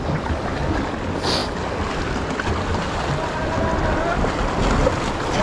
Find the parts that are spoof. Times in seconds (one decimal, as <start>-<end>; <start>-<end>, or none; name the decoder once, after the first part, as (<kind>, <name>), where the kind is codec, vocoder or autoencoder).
none